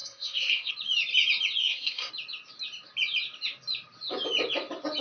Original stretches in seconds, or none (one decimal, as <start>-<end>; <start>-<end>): 0.7-1.6; 2.1-5.0